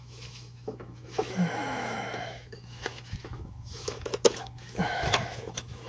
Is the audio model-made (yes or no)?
yes